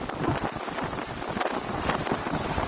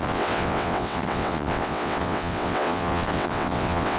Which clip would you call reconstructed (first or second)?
second